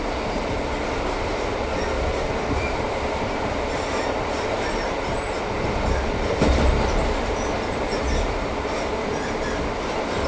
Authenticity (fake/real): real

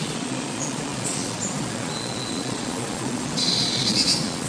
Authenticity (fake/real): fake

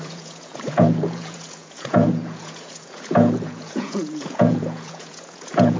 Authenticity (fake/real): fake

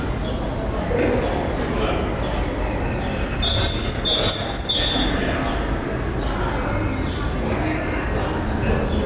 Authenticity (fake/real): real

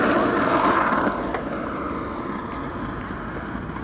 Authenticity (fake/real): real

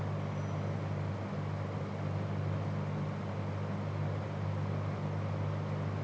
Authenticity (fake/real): real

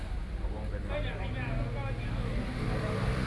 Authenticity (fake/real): real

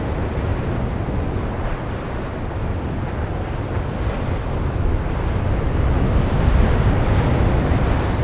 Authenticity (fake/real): real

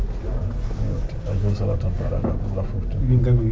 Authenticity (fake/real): real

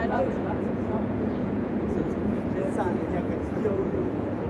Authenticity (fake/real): fake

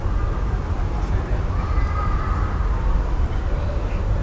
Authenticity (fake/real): real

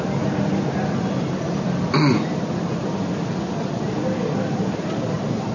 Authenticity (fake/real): real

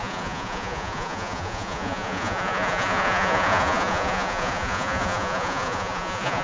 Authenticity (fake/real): fake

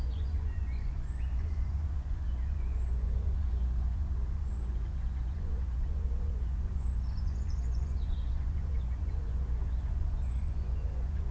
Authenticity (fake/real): fake